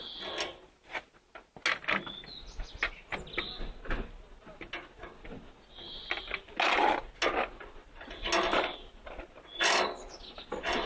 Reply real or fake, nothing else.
real